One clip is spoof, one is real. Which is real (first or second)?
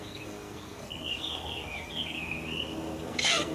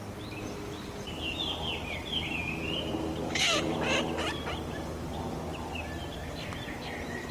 second